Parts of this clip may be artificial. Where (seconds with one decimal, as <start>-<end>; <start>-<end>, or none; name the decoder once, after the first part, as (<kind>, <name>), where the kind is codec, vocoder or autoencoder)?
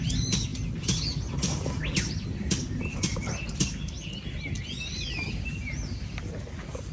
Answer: none